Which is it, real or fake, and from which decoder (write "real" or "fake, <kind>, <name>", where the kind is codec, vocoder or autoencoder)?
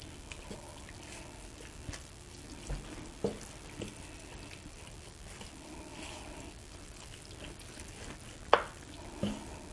real